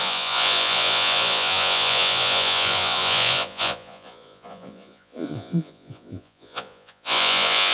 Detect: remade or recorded remade